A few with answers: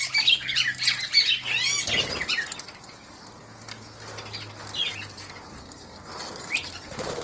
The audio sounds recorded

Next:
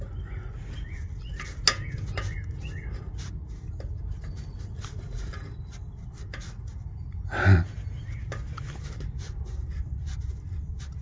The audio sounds recorded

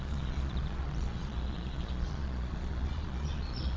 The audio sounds remade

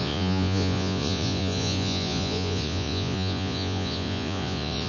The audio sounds remade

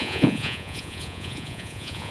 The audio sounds remade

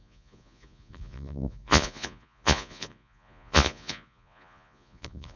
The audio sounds remade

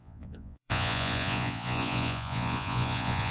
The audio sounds remade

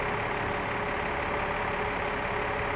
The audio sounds recorded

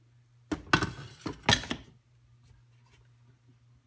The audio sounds recorded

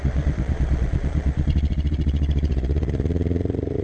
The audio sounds remade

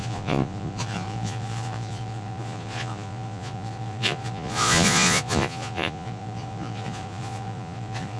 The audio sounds remade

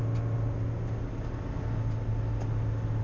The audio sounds recorded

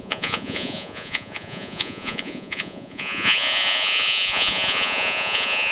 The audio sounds remade